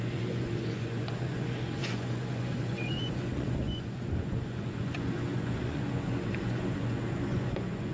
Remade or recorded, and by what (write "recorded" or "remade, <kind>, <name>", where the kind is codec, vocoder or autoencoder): remade, vocoder, Vocos